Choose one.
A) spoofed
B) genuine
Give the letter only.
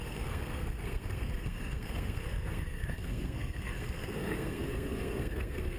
A